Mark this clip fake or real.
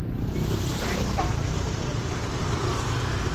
real